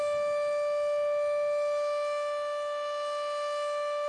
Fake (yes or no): no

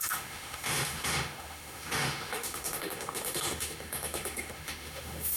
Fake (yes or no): yes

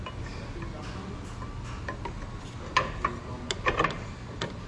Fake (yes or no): no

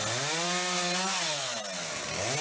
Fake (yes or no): no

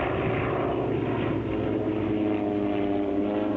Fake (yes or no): no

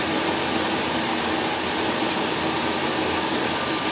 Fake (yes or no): no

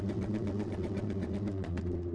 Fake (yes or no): yes